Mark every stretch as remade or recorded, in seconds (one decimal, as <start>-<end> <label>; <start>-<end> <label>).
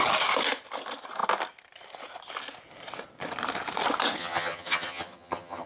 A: 0.0-4.2 recorded; 4.2-5.7 remade